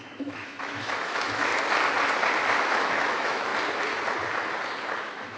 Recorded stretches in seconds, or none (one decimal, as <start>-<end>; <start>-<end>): 1.5-2.6; 3.5-5.0

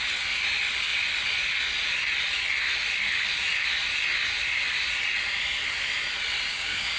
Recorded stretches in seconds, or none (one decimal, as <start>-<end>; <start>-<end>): 0.0-6.5

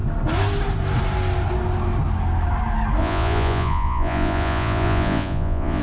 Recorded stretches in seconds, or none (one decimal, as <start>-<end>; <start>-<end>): 0.0-3.0

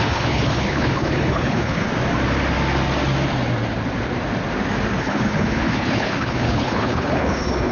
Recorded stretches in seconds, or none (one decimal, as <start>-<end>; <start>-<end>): 1.9-5.0

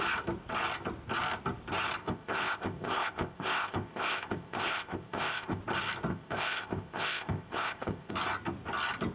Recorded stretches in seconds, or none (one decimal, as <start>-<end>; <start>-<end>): 0.0-2.0; 5.6-6.1; 8.1-9.1

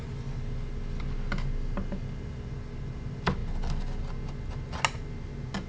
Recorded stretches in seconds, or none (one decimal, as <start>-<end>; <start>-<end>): 0.0-5.7